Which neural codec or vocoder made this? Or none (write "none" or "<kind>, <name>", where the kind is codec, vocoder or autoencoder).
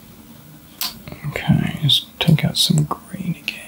none